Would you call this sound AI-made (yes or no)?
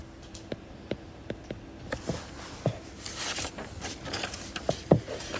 no